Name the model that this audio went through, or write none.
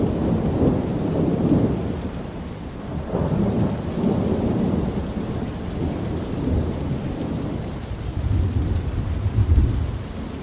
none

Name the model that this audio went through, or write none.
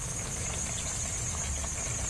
none